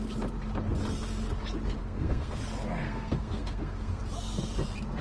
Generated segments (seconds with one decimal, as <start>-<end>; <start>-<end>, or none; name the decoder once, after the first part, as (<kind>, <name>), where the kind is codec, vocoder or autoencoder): 1.8-2.4 (codec, SNAC); 2.8-4.0